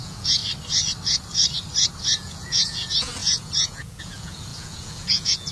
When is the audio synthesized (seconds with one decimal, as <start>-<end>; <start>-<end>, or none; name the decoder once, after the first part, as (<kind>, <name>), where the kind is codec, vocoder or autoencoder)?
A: 0.0-0.4 (vocoder, Vocos); 2.0-5.5